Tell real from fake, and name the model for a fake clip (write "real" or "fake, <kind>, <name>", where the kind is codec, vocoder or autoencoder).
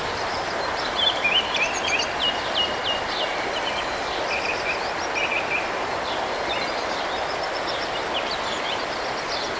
real